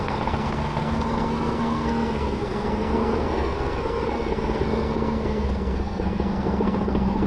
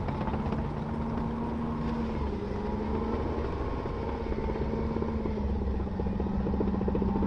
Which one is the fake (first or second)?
first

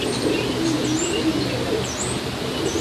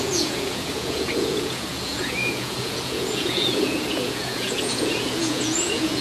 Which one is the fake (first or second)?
second